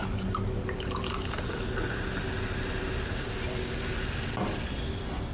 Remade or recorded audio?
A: recorded